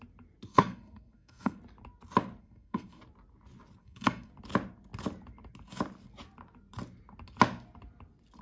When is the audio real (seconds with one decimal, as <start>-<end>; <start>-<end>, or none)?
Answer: 0.0-0.5; 1.6-2.4; 3.0-3.8; 4.3-8.4